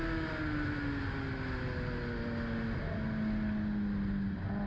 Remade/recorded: recorded